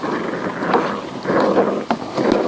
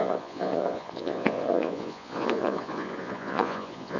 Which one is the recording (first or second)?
first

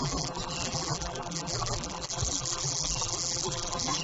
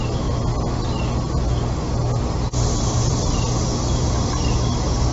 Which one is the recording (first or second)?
second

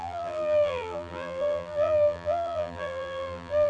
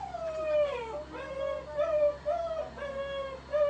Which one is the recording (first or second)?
second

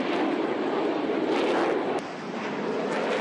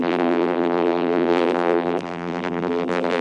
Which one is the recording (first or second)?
first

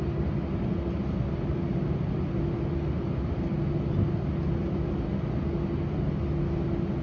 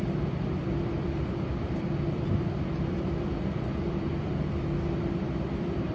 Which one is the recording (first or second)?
first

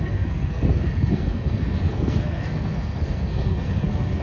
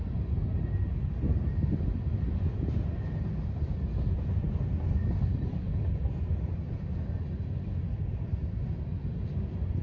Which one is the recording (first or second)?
second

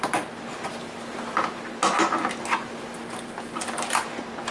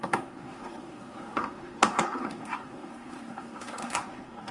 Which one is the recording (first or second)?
first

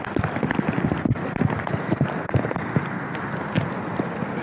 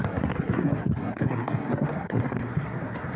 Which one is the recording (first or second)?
first